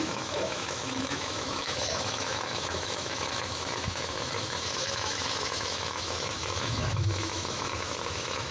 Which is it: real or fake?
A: fake